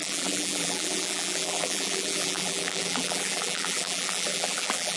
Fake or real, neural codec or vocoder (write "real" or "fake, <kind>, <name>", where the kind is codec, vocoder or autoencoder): fake, vocoder, BigVGAN v2